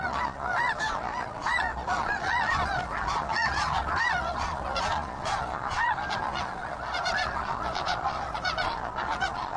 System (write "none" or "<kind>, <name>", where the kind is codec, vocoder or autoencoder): vocoder, Vocos